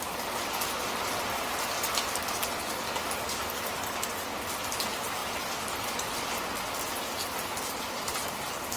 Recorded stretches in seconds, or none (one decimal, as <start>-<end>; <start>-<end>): 0.0-8.8